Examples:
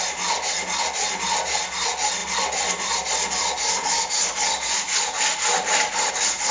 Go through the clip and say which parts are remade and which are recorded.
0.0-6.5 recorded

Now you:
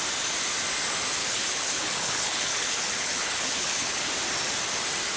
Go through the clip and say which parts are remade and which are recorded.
0.0-1.2 recorded; 1.2-4.1 remade; 4.1-5.2 recorded

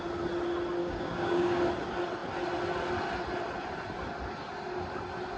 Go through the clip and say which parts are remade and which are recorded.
0.0-0.8 recorded; 0.8-1.6 remade; 1.6-5.4 recorded

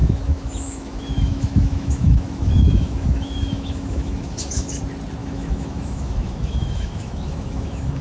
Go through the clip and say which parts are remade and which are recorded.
0.0-4.8 remade; 4.8-5.2 recorded; 5.2-8.0 remade

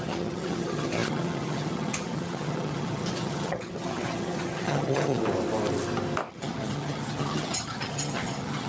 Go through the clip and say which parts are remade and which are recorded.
0.0-5.2 remade; 5.2-6.3 recorded; 6.3-8.7 remade